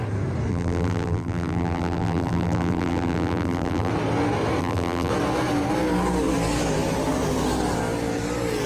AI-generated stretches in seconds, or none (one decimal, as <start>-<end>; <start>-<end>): 0.5-3.9; 4.6-5.1